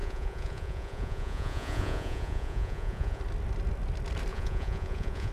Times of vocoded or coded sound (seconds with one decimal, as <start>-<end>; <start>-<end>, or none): 0.0-3.2; 4.3-5.3

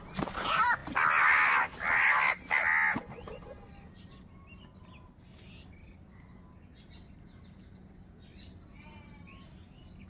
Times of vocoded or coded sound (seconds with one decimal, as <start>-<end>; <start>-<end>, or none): none

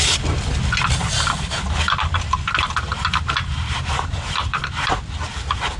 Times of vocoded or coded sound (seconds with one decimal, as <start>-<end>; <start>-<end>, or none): 2.9-4.9

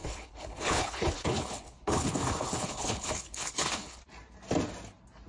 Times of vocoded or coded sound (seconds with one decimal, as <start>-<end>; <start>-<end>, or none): 0.0-4.0

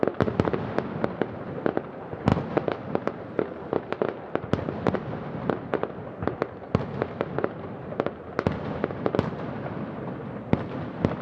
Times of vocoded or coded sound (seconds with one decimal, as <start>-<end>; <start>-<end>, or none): none